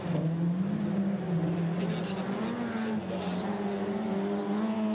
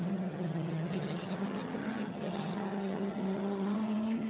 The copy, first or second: second